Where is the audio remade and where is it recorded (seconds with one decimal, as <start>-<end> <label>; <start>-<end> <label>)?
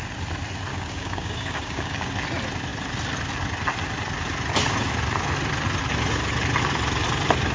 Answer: 0.0-0.7 recorded; 0.7-2.1 remade; 2.1-7.5 recorded